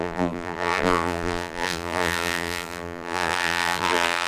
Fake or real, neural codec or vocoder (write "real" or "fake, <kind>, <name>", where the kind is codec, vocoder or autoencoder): fake, vocoder, BigVGAN v2